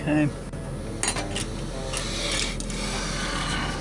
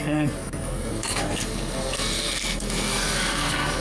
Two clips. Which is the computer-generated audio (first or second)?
second